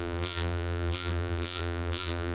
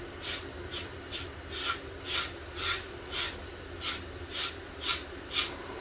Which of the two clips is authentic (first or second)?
second